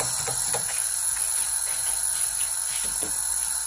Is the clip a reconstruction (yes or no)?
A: yes